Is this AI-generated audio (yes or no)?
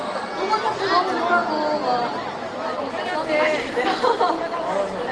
no